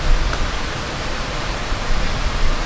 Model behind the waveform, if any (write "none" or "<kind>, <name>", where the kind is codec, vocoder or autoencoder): vocoder, BigVGAN v2